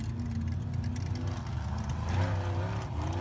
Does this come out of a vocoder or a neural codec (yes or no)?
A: no